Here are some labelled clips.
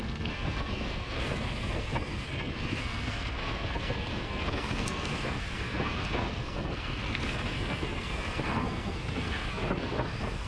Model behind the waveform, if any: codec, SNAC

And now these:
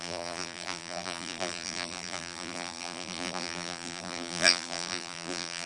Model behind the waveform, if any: vocoder, BigVGAN v2